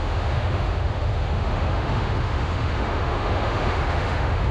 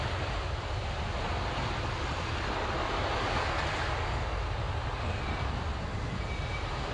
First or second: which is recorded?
second